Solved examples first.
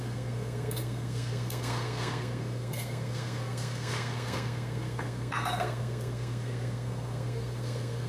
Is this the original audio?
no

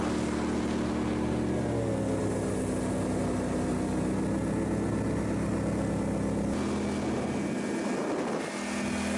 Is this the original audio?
yes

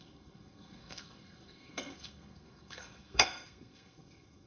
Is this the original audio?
no